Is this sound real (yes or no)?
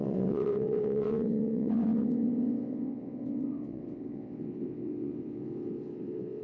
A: no